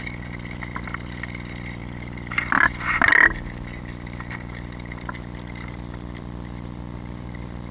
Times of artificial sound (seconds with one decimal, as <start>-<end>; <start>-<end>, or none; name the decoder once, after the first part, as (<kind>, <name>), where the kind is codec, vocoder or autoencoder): 0.0-1.8 (vocoder, BigVGAN v2); 3.8-7.7